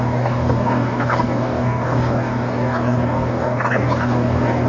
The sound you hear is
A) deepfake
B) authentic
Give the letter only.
A